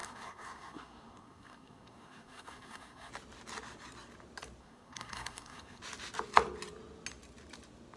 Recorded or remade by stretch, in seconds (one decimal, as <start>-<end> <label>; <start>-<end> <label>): 0.0-3.1 remade; 3.1-4.6 recorded; 4.6-5.8 remade; 5.8-8.0 recorded